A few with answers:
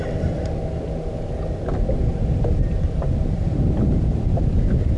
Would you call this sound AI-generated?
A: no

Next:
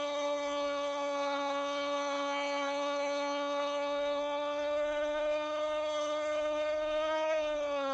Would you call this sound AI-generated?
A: yes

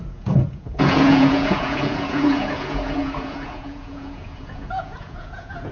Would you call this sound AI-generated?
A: yes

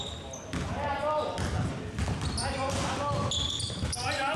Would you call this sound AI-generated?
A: no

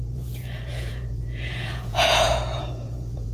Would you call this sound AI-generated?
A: yes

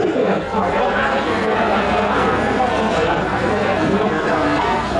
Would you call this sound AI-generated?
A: yes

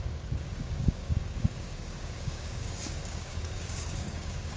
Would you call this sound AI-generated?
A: yes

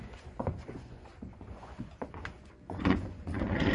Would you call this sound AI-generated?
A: yes